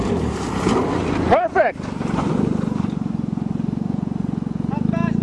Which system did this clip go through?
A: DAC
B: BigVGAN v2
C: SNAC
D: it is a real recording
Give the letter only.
B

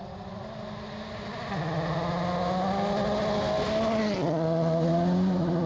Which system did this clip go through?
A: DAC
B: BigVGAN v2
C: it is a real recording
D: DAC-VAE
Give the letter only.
C